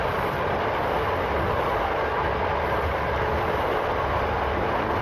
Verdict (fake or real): real